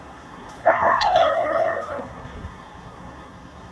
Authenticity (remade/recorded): remade